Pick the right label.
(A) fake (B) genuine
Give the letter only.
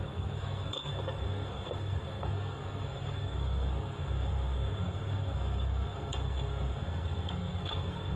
A